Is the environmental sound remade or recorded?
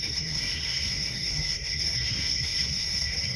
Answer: remade